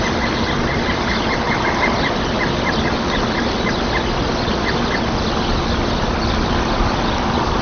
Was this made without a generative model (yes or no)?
yes